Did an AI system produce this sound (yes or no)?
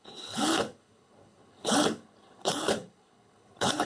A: yes